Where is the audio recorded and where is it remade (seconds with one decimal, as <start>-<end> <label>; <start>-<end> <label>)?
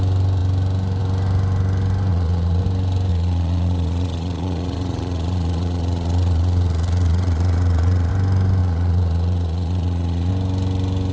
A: 0.0-2.1 recorded; 2.1-2.6 remade; 2.6-3.1 recorded; 3.1-8.1 remade; 8.1-8.6 recorded; 8.6-10.3 remade; 10.3-11.1 recorded